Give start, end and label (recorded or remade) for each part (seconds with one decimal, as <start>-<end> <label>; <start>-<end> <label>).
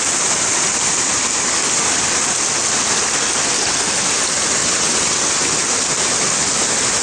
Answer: 0.0-4.6 recorded; 4.6-5.3 remade; 5.3-7.0 recorded